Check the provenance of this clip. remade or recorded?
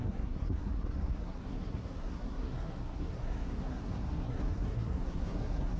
remade